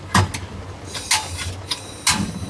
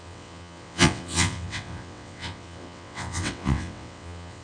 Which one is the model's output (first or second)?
second